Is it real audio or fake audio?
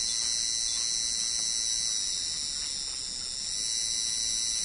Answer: real